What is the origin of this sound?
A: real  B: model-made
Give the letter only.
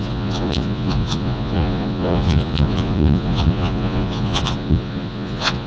B